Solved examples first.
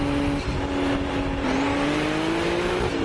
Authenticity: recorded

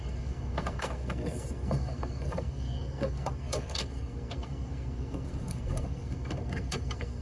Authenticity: remade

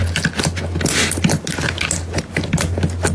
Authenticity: recorded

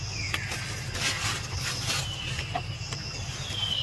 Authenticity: recorded